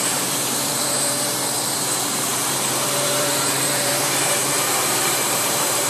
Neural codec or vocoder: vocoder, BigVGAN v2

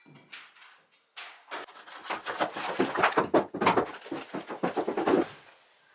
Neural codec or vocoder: none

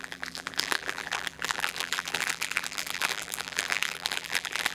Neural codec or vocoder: vocoder, BigVGAN v2